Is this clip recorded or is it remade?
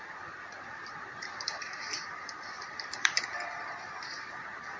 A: remade